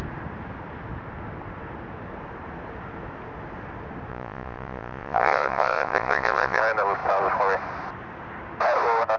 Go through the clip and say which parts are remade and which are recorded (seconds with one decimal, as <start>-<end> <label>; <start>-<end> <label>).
0.0-4.1 recorded; 4.1-6.6 remade; 6.6-9.2 recorded

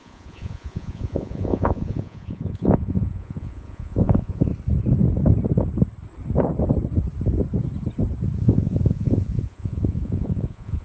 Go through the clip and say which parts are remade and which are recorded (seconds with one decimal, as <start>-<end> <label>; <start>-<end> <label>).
0.0-4.5 remade; 4.5-8.4 recorded; 8.4-10.8 remade

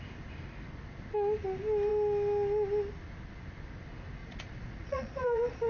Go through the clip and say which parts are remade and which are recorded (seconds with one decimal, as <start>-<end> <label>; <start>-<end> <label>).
0.0-4.2 recorded; 4.2-5.7 remade